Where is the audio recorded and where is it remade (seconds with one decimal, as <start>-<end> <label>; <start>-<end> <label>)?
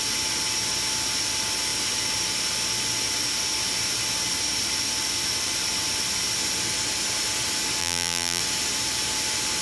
0.0-7.8 recorded; 7.8-8.4 remade; 8.4-9.6 recorded